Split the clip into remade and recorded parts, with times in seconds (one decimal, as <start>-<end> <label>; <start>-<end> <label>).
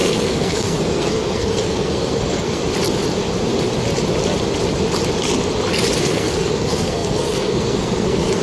0.0-2.6 remade; 2.6-6.0 recorded; 6.0-8.4 remade